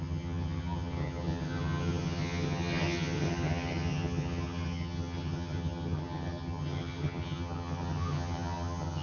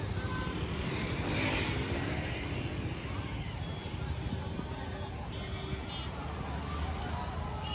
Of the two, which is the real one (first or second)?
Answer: second